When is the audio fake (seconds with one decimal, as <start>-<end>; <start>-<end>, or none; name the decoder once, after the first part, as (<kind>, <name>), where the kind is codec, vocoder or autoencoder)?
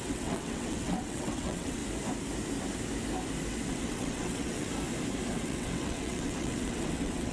0.0-1.8 (vocoder, WaveNeXt); 3.7-4.7; 5.3-7.3